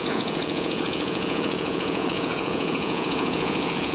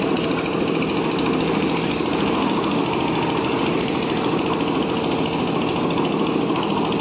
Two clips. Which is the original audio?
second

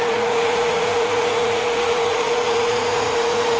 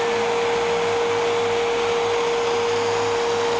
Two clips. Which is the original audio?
second